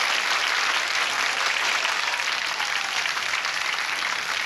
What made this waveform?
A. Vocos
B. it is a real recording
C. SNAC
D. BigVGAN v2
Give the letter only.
D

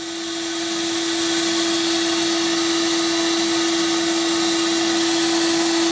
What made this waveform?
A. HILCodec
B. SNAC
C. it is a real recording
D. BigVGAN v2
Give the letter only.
C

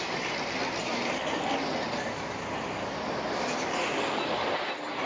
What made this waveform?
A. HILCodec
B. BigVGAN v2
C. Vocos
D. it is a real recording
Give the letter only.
D